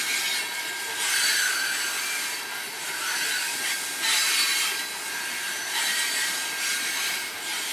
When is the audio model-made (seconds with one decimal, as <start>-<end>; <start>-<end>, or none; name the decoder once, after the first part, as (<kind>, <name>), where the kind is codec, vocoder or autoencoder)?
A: none